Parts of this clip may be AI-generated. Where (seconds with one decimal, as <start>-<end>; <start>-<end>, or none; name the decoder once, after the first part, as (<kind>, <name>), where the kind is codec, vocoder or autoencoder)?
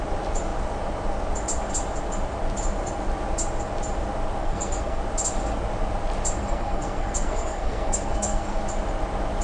4.4-5.0 (codec, SNAC); 6.4-8.6